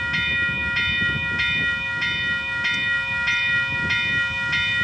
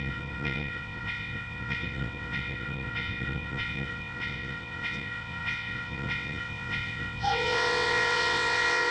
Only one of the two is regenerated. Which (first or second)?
second